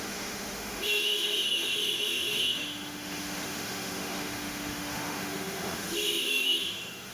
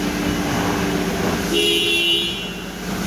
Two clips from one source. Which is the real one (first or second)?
second